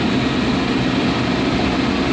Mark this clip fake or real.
real